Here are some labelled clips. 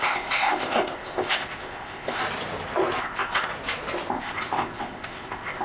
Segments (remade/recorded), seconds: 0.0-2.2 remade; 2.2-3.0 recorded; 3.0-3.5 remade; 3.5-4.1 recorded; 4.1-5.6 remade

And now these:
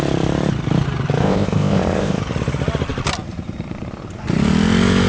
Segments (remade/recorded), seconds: 0.0-1.2 recorded; 1.2-2.2 remade; 2.2-5.1 recorded

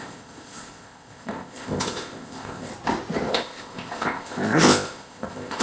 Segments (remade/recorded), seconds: 0.0-2.7 remade; 2.7-3.3 recorded; 3.3-5.6 remade